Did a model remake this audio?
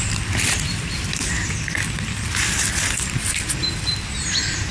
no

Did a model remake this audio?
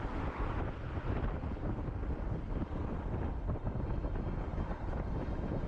yes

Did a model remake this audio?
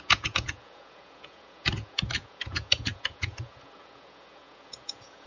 yes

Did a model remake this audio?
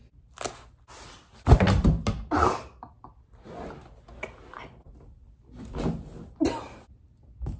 no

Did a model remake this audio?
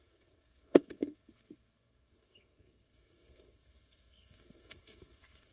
yes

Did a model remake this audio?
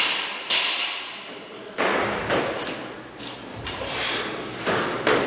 no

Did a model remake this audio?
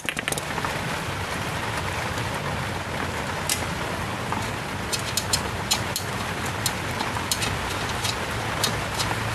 no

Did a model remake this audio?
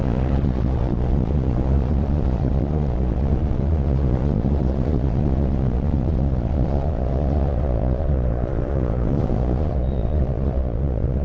yes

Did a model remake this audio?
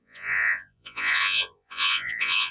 yes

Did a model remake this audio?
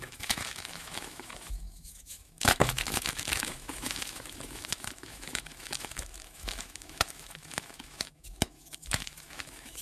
yes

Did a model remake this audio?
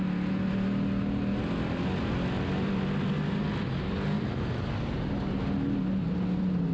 no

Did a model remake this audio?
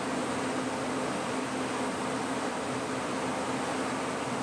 no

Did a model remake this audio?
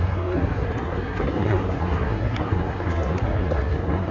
yes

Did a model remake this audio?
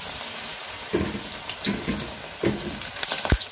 no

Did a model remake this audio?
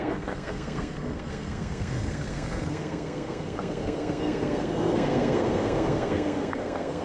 yes